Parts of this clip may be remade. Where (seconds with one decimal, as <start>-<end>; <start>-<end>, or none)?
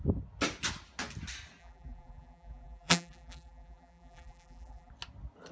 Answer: 1.6-4.9